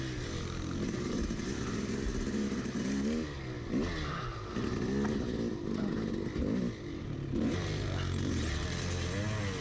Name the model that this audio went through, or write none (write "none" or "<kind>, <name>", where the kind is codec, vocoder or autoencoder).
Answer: none